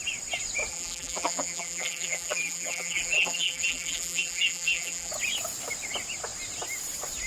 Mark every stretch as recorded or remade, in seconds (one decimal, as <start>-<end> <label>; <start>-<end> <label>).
0.0-0.7 recorded; 0.7-5.1 remade; 5.1-7.3 recorded